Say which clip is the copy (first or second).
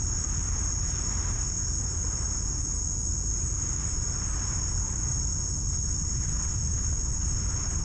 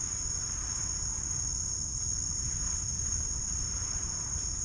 second